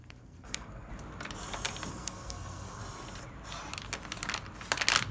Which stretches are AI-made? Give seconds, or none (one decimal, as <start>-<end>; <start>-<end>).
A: 0.0-0.9; 1.9-2.8